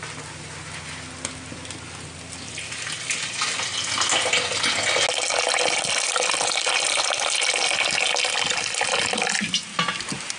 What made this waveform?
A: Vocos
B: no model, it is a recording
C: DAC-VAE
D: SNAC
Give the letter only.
B